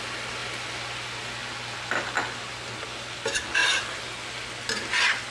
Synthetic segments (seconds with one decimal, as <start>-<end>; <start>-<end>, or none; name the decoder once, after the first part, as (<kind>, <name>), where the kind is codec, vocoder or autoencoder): none